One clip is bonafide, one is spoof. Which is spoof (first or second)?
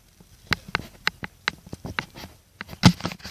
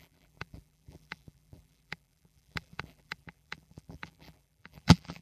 second